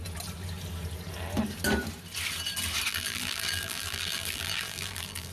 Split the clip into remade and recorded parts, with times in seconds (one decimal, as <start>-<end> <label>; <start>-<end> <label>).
0.0-2.9 recorded; 2.9-5.3 remade